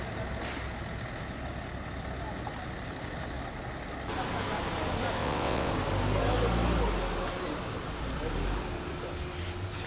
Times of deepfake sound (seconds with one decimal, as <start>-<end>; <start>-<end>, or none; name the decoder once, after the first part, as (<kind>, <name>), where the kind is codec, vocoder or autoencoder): 5.2-5.7 (vocoder, WaveNeXt)